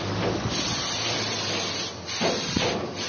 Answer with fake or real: real